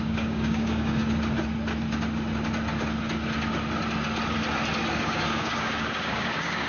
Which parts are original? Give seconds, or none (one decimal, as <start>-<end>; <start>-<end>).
1.0-5.0